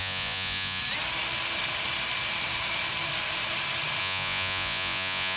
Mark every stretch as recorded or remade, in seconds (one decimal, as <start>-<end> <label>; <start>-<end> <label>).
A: 0.0-0.8 remade; 0.8-4.0 recorded; 4.0-5.4 remade